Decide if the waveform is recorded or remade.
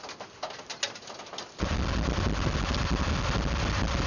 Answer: recorded